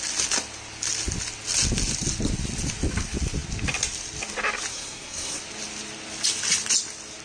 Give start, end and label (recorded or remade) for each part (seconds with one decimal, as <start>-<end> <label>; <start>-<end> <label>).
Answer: 0.0-4.7 recorded; 4.7-5.4 remade; 5.4-7.2 recorded